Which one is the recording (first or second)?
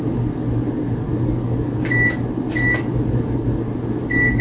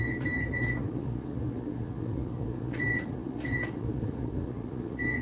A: first